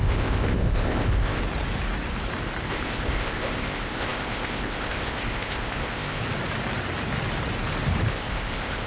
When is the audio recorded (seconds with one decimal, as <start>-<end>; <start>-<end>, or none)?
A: 1.4-2.7; 6.2-8.1